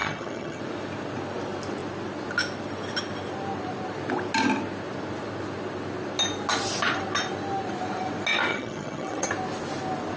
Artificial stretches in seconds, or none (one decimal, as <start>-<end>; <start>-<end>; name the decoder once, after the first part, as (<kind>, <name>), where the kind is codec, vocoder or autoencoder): 0.0-0.6 (vocoder, HiFi-GAN); 8.5-9.3